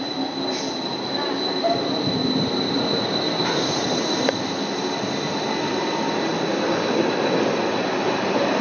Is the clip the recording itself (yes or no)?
yes